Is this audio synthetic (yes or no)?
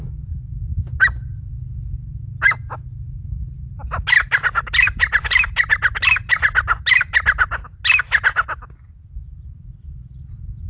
no